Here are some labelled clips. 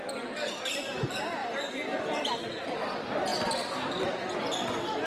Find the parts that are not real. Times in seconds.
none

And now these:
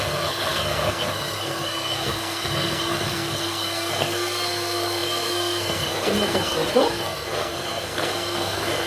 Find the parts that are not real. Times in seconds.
0.0-8.9

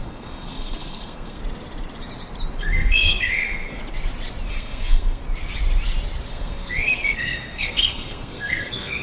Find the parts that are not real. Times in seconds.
0.0-1.4; 2.6-3.8; 4.5-5.2; 6.3-9.0

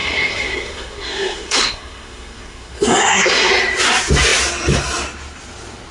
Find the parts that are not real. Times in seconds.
0.0-3.5